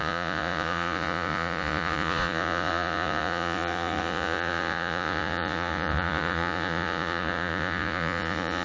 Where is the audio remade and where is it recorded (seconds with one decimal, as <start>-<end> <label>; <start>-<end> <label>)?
0.0-8.6 remade